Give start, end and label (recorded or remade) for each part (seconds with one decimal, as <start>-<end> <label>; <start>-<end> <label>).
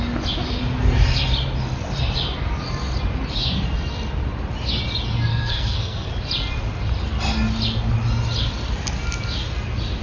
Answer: 0.0-5.3 recorded; 5.3-6.1 remade; 6.1-10.0 recorded